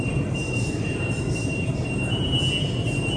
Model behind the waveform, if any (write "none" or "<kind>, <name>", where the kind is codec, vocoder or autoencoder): vocoder, BigVGAN v2